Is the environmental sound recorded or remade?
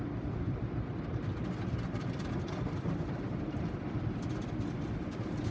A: remade